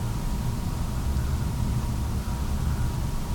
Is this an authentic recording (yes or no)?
no